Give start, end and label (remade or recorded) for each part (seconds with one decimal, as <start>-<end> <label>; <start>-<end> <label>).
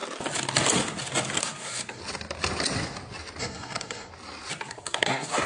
0.0-1.4 recorded; 1.4-2.0 remade; 2.0-3.4 recorded; 3.4-4.1 remade; 4.1-4.7 recorded; 4.7-5.5 remade